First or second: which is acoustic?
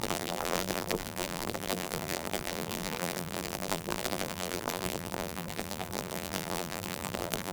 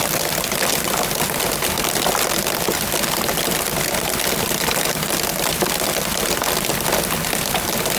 second